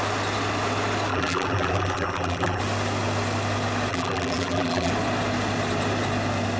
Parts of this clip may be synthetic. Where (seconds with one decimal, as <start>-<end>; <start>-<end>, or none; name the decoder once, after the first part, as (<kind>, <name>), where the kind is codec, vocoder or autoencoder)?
1.1-2.6 (vocoder, BigVGAN v2); 3.9-4.9